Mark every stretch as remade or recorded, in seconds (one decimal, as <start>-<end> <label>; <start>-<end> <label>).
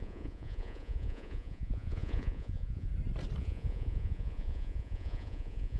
0.0-2.9 remade; 2.9-3.4 recorded; 3.4-5.8 remade